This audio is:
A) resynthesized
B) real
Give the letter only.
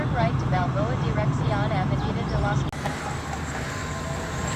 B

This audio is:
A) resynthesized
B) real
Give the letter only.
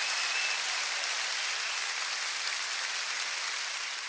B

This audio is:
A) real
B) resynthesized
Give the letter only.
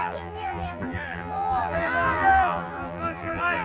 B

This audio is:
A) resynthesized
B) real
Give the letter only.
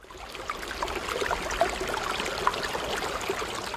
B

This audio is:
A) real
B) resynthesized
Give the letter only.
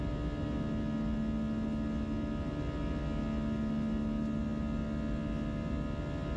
A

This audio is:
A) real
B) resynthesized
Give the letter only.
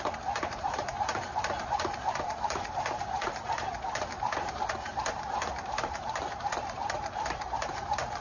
B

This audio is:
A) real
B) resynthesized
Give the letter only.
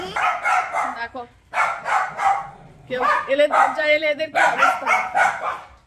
B